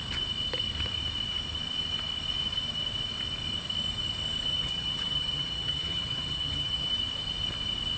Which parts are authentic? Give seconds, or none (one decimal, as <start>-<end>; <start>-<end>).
0.0-4.5; 6.9-8.0